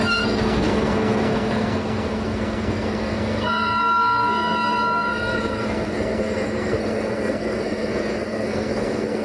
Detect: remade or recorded remade